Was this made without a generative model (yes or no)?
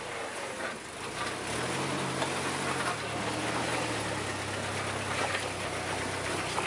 yes